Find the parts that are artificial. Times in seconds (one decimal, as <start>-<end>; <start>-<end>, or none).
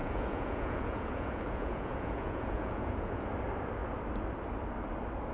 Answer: 0.0-3.2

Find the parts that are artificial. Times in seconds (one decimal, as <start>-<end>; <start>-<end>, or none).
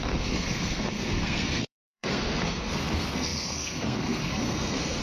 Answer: 0.0-5.0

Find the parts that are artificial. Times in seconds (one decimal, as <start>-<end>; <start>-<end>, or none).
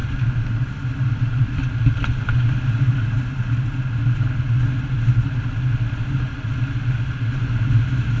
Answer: none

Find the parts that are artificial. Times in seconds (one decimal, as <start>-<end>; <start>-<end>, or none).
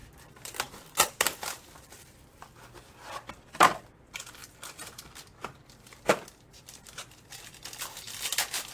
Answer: 0.0-3.9; 4.4-7.3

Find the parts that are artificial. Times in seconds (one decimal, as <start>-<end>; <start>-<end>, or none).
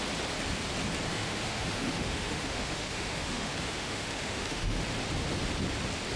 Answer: 1.1-4.8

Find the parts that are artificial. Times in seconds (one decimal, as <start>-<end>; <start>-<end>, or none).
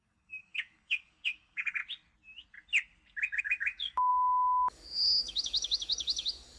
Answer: 0.0-1.8; 3.4-6.6